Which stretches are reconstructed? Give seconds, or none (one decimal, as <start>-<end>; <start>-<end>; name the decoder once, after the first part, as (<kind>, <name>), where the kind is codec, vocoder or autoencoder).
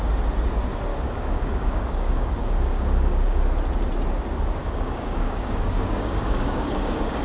0.9-3.4 (codec, DAC); 4.6-7.2